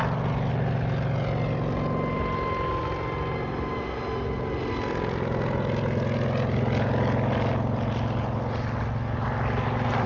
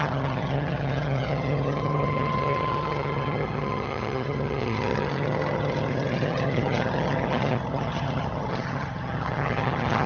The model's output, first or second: second